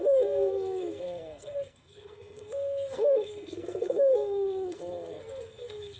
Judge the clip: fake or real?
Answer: fake